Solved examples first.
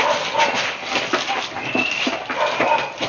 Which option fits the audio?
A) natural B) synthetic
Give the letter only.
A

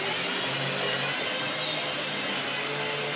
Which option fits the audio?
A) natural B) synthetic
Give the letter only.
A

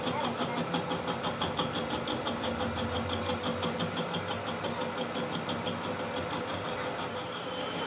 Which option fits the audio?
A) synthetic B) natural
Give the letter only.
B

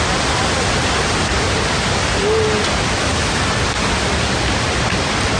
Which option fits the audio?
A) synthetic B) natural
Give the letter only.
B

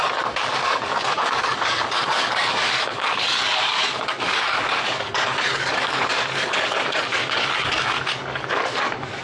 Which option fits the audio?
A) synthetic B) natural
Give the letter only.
A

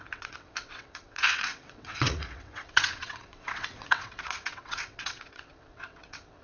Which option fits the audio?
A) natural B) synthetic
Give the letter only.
B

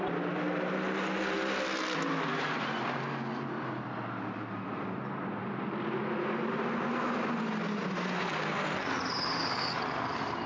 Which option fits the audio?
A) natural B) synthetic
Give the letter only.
A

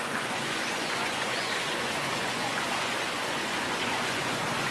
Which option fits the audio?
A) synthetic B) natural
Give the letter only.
A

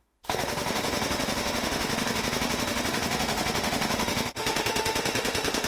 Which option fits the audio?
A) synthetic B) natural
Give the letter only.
A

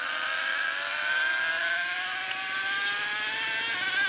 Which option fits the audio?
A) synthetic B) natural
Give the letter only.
B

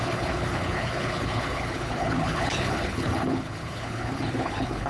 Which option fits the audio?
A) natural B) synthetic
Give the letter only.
B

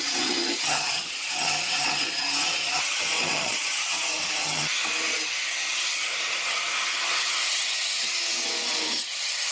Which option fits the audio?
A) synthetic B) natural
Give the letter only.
A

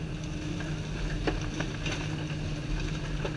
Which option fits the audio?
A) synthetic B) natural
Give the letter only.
B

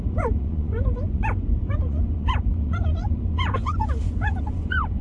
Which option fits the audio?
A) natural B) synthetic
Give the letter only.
B